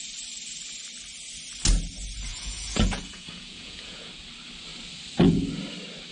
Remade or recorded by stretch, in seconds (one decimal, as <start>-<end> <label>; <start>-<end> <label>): 0.0-2.3 recorded; 2.3-4.1 remade; 4.1-6.1 recorded